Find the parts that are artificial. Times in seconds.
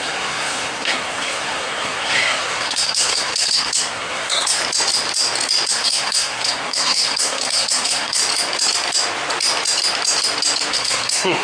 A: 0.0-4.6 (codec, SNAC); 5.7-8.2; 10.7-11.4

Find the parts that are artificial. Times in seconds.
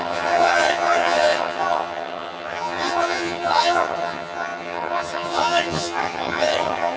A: 0.0-7.0 (vocoder, HiFi-GAN)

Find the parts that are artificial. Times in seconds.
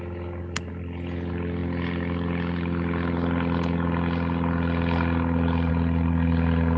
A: none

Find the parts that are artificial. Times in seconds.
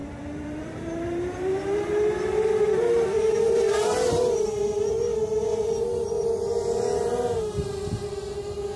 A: 0.0-4.6 (vocoder, BigVGAN v2)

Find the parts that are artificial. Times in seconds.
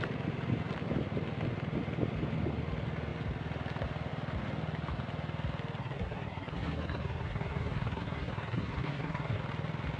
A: 5.8-9.4 (codec, SNAC)